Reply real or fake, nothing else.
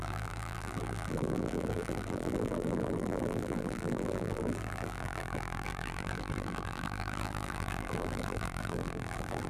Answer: fake